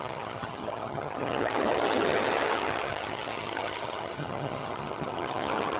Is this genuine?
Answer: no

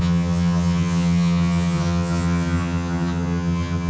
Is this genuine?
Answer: no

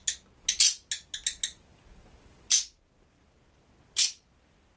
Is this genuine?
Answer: yes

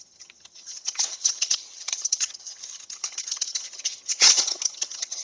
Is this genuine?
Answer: no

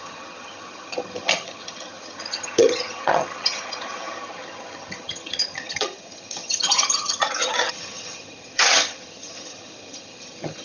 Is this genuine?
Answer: no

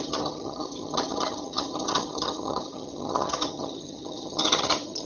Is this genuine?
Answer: no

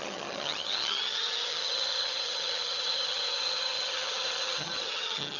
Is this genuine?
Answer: no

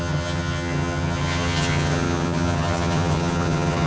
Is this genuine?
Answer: no